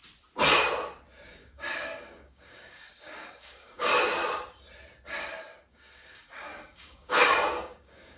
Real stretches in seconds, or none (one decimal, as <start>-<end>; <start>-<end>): 0.0-1.3; 3.9-5.7